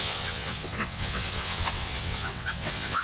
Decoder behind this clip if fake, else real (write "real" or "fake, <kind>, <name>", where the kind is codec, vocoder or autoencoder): fake, vocoder, WaveNeXt